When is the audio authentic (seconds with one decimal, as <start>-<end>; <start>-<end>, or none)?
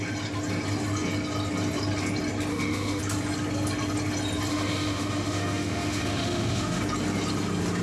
0.0-2.5; 3.0-4.5; 6.8-7.8